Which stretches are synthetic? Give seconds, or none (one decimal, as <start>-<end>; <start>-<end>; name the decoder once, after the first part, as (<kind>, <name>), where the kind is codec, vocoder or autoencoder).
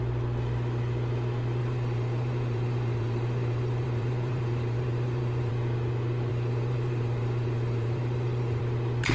1.6-5.5 (vocoder, BigVGAN v2); 6.3-8.6